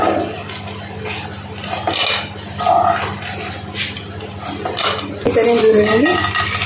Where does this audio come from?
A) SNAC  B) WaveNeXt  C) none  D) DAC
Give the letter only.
C